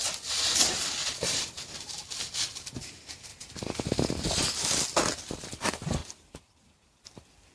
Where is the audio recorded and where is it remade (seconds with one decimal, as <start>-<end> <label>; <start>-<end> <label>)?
0.0-1.0 recorded; 1.0-2.0 remade; 2.0-6.0 recorded; 6.0-7.1 remade; 7.1-7.5 recorded